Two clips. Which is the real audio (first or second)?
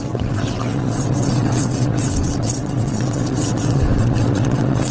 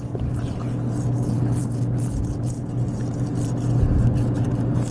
second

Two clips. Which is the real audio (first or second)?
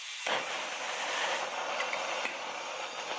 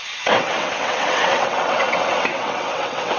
first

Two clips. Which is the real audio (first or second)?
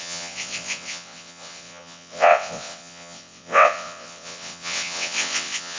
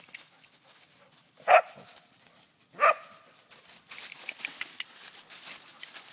second